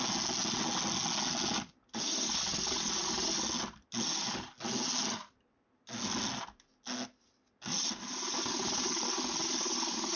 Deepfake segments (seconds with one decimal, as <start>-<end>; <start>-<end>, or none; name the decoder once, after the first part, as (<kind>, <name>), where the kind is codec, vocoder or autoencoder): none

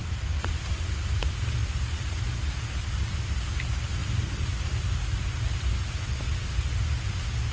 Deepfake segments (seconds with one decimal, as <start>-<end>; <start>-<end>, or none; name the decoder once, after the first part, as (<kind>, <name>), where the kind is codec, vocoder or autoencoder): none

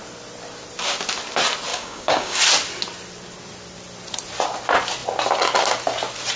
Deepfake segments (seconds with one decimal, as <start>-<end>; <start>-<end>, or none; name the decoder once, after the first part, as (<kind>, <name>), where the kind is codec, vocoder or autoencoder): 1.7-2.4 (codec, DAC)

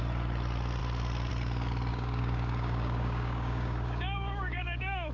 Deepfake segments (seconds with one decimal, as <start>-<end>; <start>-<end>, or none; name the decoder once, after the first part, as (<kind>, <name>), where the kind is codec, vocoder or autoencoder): 1.9-5.1 (codec, DAC)

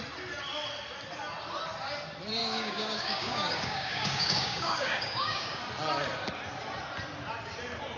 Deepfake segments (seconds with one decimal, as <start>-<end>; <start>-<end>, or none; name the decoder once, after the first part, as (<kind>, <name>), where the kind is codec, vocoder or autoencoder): 2.4-5.6 (codec, DAC)